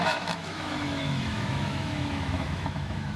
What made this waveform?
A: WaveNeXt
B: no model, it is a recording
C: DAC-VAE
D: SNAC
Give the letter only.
C